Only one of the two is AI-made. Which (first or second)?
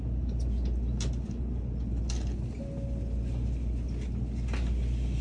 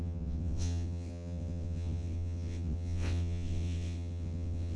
second